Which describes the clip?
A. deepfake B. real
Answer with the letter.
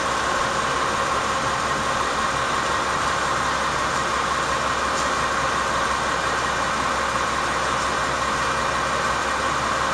B